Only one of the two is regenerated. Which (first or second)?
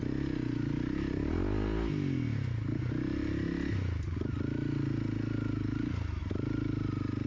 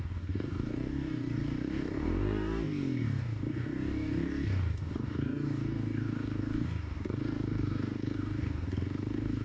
second